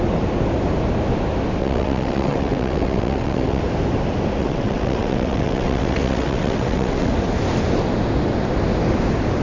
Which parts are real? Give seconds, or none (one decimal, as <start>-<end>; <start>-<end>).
0.0-1.6; 3.6-4.4; 7.1-9.4